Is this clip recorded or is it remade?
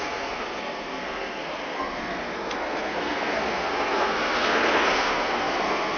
remade